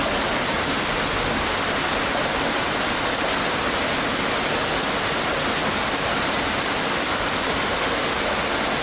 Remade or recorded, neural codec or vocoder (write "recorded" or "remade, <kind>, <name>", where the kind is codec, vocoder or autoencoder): recorded